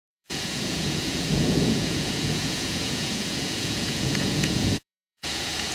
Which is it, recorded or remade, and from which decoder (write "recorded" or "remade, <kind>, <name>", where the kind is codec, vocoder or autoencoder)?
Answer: remade, vocoder, Vocos